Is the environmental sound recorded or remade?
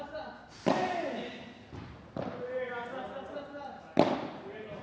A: recorded